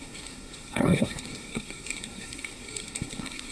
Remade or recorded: remade